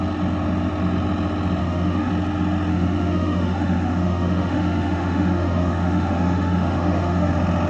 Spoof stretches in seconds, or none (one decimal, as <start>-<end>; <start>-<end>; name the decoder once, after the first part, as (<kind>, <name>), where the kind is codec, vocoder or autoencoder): 1.6-2.1 (autoencoder, DAC-VAE); 2.7-7.3